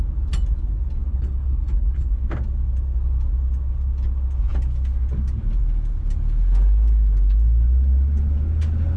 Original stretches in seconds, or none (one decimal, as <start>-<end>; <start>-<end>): 0.0-1.1; 2.1-9.0